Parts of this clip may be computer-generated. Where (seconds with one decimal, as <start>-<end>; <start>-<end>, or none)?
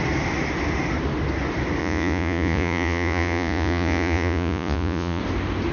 1.8-5.2